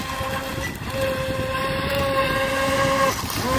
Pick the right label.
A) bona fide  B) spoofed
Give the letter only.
A